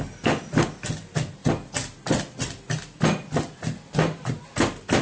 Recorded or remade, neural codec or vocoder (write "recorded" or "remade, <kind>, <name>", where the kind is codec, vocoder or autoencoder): recorded